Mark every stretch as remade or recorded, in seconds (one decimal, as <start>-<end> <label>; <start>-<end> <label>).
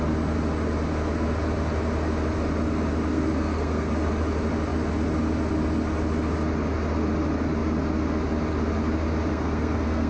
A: 0.0-3.1 recorded; 3.1-3.9 remade; 3.9-9.3 recorded; 9.3-10.1 remade